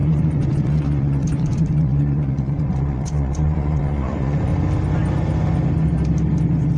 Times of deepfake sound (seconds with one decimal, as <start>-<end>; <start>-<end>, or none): 0.0-4.5